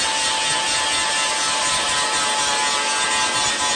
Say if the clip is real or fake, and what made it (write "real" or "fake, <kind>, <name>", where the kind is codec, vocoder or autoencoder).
real